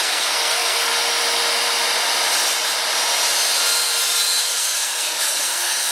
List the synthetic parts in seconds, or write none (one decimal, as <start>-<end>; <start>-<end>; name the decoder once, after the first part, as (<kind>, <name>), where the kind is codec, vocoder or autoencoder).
0.0-0.9 (codec, SNAC); 4.4-5.9